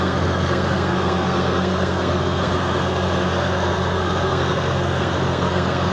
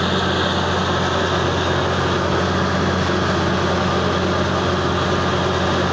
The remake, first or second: first